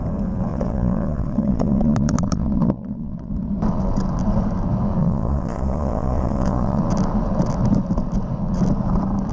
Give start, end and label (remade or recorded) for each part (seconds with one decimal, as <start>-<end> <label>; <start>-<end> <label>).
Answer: 0.0-0.5 recorded; 0.5-3.3 remade; 3.3-5.0 recorded; 5.0-6.8 remade; 6.8-9.3 recorded